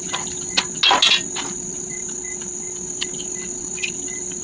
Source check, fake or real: real